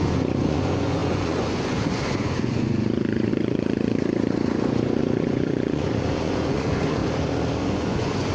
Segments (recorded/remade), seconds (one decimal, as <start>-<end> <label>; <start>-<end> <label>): 0.0-7.0 remade; 7.0-7.6 recorded; 7.6-8.3 remade